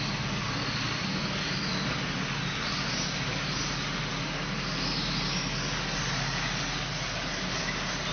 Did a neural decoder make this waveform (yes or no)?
no